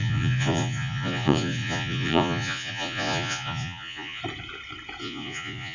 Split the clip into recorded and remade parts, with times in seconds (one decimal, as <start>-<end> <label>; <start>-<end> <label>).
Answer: 0.0-4.2 remade; 4.2-5.0 recorded; 5.0-5.7 remade